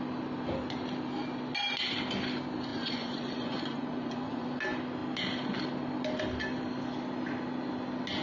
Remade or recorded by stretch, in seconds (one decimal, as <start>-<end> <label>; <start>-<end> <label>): 0.0-2.7 recorded; 2.7-4.5 remade; 4.5-8.2 recorded